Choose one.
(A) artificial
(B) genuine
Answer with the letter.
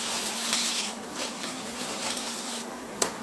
A